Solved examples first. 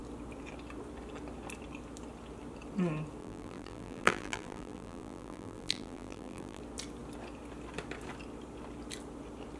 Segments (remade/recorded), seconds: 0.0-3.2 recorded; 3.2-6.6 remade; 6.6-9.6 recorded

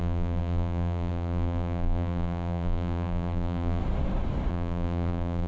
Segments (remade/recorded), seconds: 0.0-3.8 remade; 3.8-4.5 recorded; 4.5-5.5 remade

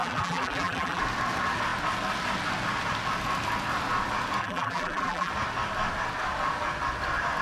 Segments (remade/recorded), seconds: 0.0-1.0 remade; 1.0-4.4 recorded; 4.4-5.3 remade; 5.3-7.4 recorded

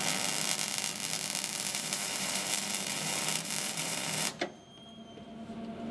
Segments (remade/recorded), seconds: 0.0-1.5 recorded; 1.5-5.0 remade; 5.0-5.9 recorded